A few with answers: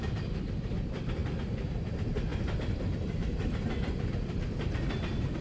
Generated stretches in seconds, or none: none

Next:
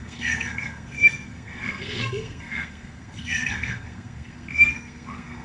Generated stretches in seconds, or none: 0.0-5.4 (codec, SNAC)

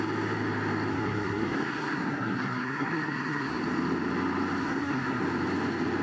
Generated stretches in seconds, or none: 0.9-3.6 (codec, SNAC); 4.6-5.2

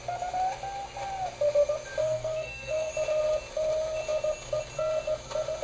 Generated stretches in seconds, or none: 2.0-2.9 (codec, SNAC)

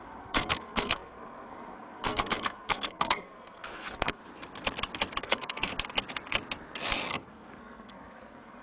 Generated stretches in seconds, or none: 0.0-4.2 (codec, SNAC); 5.2-5.7; 7.1-8.6

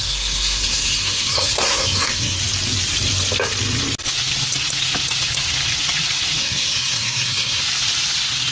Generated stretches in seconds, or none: 0.0-2.4 (codec, SNAC); 6.4-7.6

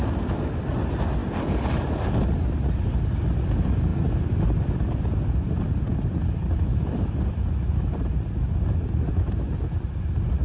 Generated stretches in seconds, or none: none